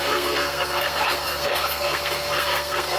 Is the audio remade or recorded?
remade